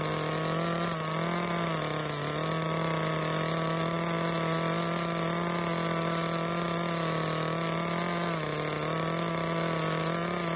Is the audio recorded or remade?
recorded